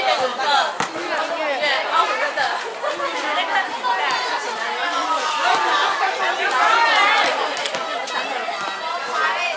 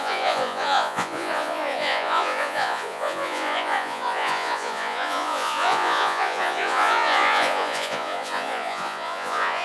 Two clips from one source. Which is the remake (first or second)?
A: second